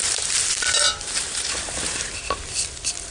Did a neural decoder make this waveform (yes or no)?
yes